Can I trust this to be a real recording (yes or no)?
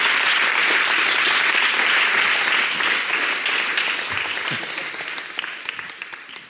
yes